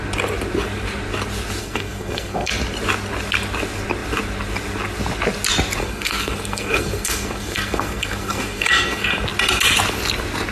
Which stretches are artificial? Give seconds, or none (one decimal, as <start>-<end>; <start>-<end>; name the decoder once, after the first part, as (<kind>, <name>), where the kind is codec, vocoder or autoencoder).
1.6-2.5 (codec, SNAC); 5.8-9.1